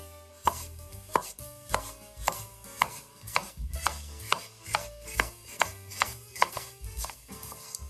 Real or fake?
fake